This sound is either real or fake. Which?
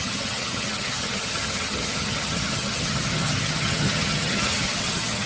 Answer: fake